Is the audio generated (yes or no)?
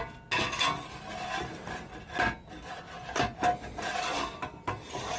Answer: no